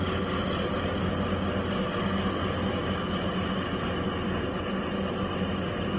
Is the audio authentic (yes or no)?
yes